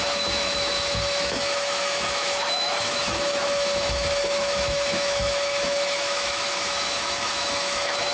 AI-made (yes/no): yes